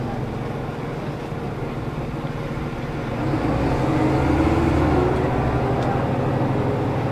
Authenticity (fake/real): real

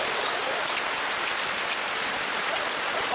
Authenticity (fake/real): real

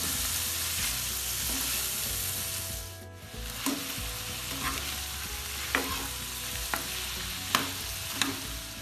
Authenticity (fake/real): real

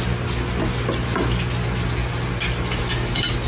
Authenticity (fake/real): real